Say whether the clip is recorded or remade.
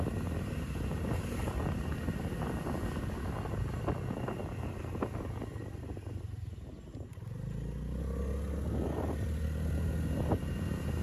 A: recorded